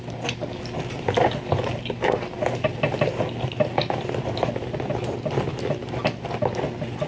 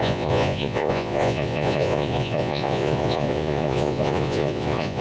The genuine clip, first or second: first